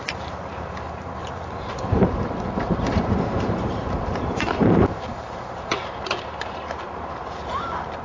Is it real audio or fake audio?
fake